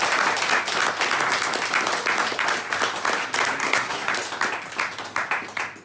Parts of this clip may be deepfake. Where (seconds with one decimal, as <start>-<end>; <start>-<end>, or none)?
3.6-4.1